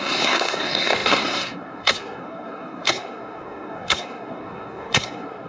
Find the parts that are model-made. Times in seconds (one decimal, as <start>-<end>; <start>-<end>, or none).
0.0-5.5